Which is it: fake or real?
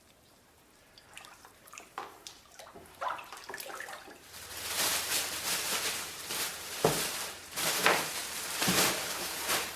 fake